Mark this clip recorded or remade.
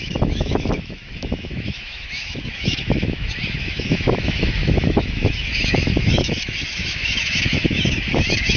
remade